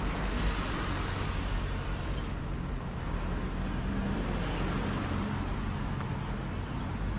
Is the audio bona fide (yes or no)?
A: yes